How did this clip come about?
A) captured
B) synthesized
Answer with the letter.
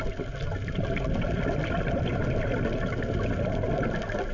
A